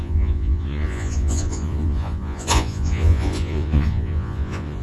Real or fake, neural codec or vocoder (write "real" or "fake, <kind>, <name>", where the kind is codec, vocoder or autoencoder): fake, vocoder, Vocos